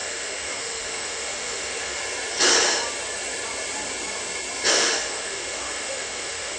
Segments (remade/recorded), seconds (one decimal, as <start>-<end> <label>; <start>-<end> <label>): 0.0-2.0 remade; 2.0-4.7 recorded; 4.7-6.6 remade